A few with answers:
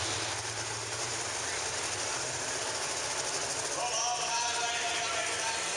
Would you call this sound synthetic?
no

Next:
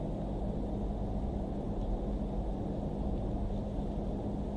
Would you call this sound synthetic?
no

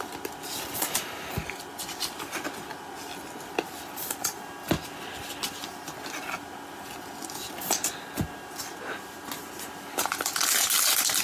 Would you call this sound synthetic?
no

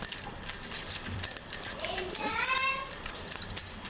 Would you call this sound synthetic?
yes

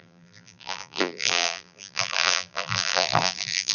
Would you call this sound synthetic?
yes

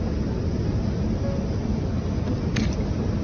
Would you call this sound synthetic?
no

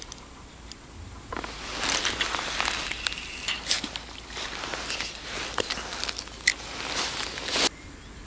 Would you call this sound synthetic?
no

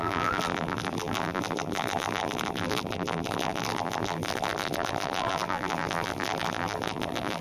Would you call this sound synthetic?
yes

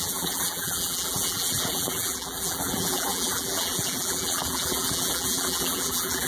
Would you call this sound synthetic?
yes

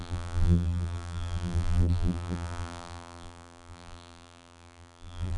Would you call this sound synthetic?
yes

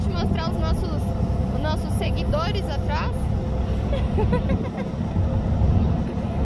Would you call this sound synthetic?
no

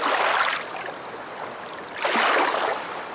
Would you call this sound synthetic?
no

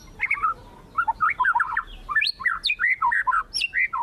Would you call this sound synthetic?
no